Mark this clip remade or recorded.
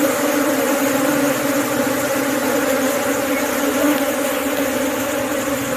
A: recorded